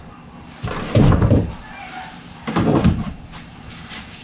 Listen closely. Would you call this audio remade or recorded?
recorded